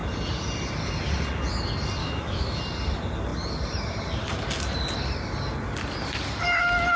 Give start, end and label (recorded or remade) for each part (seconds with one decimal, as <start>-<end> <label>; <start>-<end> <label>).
0.0-2.0 recorded; 2.0-2.6 remade; 2.6-7.0 recorded